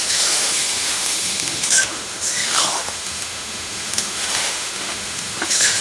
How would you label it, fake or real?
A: fake